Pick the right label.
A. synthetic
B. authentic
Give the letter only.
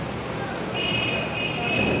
B